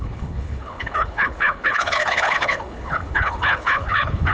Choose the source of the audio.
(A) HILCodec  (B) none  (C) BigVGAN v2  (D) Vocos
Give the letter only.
A